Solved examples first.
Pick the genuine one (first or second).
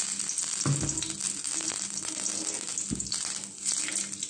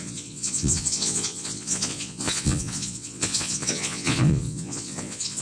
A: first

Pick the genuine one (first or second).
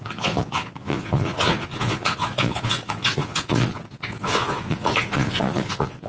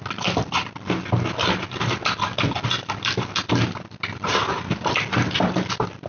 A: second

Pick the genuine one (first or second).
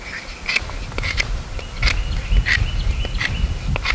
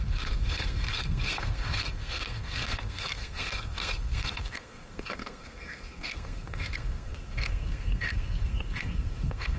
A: first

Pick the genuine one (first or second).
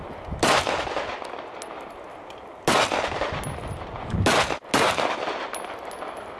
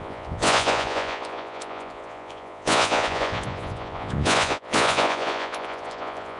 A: first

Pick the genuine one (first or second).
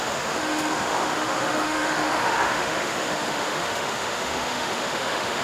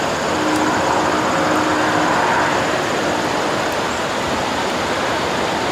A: second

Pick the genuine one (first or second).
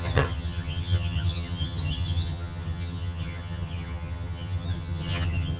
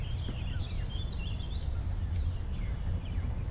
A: second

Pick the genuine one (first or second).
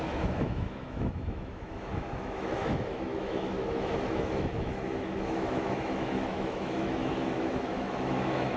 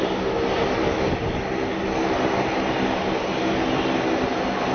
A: second